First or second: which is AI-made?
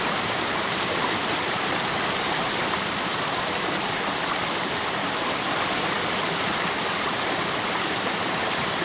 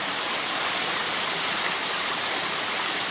first